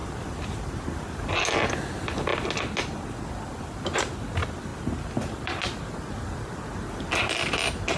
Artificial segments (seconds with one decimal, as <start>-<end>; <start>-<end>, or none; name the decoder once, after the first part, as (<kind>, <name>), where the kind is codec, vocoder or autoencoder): none